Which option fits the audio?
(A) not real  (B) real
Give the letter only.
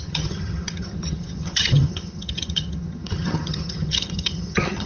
A